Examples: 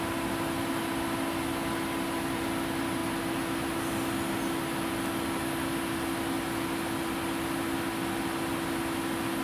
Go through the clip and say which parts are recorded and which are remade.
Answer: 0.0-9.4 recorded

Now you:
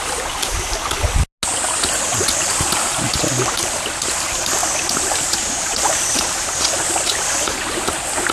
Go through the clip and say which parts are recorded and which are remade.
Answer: 0.0-8.3 recorded

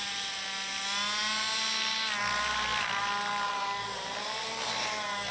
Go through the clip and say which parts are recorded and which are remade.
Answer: 0.0-5.3 recorded

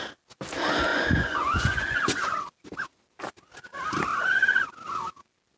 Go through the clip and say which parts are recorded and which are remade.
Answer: 0.0-0.9 recorded; 0.9-2.5 remade; 2.5-4.1 recorded; 4.1-4.7 remade; 4.7-5.6 recorded

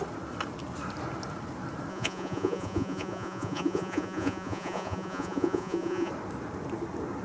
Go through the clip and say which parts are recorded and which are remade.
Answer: 0.0-1.9 recorded; 1.9-6.1 remade; 6.1-7.2 recorded